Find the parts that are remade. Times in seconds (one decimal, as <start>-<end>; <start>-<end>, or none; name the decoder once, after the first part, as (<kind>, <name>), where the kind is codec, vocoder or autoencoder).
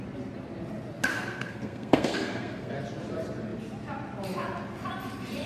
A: 1.1-2.7 (codec, SNAC)